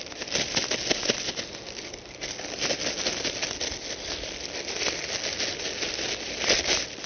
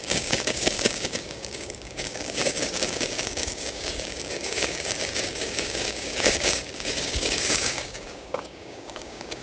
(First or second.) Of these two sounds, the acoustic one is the first